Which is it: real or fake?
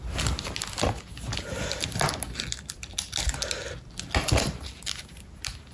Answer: real